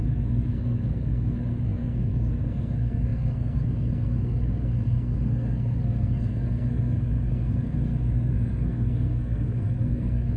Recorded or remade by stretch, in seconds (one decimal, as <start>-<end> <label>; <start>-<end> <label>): 0.0-10.4 remade